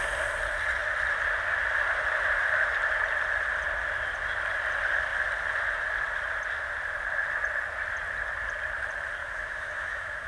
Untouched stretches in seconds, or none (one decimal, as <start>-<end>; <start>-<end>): 0.0-9.2